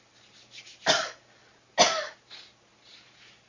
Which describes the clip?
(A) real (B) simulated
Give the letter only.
A